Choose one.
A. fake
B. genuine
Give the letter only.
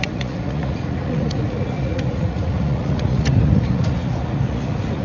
A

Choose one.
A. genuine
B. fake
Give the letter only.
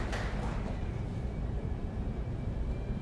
A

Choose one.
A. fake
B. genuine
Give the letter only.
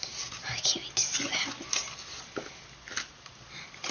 B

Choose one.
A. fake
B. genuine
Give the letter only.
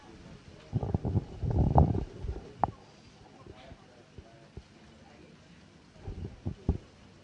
B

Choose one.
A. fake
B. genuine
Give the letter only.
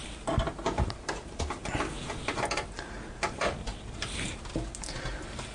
B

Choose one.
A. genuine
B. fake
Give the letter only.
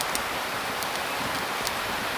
A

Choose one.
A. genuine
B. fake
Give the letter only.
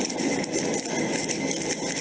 A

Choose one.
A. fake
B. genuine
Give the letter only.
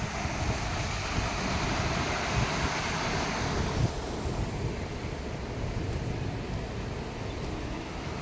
B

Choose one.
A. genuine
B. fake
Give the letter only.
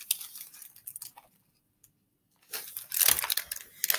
A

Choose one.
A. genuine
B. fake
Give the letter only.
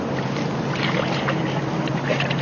A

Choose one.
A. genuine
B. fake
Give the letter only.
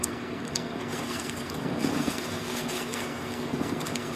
B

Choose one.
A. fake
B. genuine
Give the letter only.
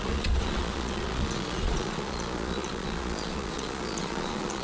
A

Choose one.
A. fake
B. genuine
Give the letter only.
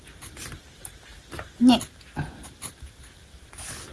B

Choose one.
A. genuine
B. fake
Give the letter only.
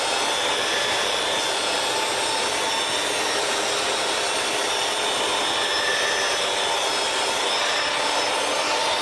A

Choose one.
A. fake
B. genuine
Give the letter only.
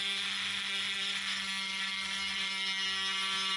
B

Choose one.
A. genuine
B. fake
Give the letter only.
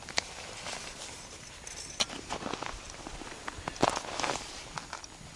A